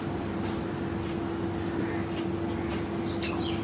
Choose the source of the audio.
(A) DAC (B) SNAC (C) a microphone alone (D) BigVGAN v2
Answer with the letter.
C